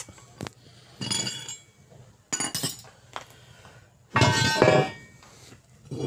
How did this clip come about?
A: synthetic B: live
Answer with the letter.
B